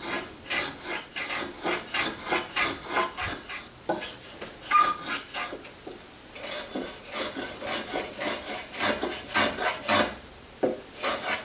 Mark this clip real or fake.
real